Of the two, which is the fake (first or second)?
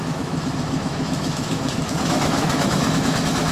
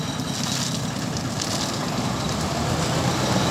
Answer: first